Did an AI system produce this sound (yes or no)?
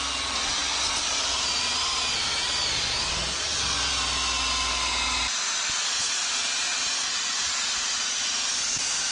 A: no